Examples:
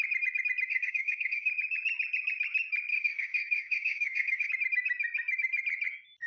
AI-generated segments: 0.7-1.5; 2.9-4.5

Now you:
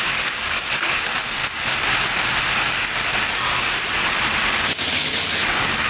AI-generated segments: 0.0-1.4; 4.9-5.9

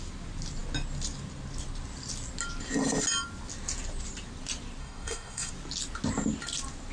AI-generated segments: 4.8-5.5

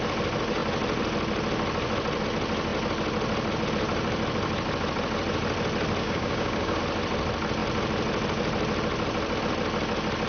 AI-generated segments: 6.0-6.8

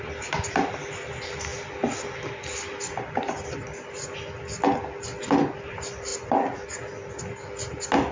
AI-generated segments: none

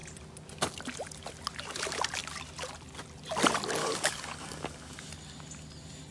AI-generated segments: 3.8-5.1

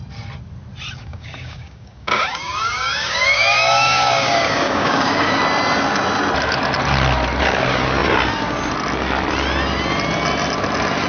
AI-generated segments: 1.0-5.4